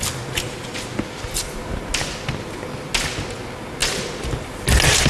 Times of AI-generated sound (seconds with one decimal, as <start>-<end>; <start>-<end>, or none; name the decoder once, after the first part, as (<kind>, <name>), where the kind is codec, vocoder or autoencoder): none

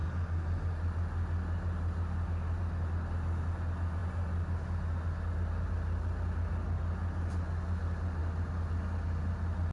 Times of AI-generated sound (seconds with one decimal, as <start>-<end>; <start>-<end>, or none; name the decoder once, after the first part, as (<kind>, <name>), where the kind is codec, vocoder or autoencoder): none